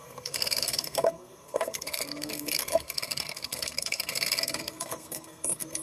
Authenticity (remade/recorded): remade